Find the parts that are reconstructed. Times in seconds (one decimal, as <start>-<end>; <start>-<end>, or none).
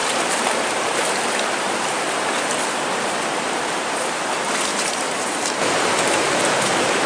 0.0-4.3; 4.7-7.1